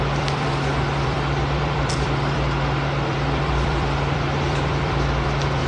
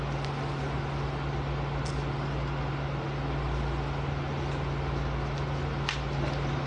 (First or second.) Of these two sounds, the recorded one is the second